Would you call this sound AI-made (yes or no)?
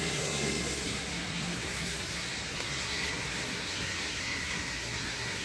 yes